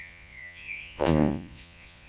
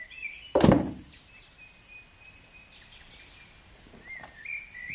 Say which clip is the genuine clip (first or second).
second